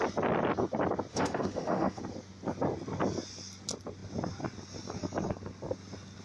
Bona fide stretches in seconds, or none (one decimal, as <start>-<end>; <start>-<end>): 0.0-1.1; 2.0-6.2